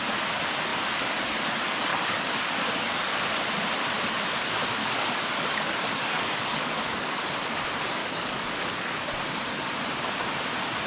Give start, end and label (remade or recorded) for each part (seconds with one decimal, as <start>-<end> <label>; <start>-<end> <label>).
0.0-1.9 recorded; 1.9-3.2 remade; 3.2-4.8 recorded; 4.8-7.2 remade; 7.2-8.0 recorded; 8.0-9.1 remade; 9.1-10.9 recorded